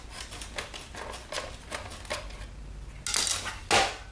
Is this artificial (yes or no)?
no